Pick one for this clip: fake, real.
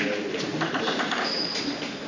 real